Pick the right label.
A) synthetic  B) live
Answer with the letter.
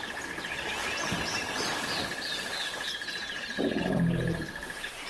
B